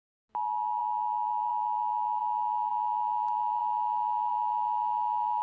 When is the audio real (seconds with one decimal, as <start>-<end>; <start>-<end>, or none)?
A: 0.0-5.4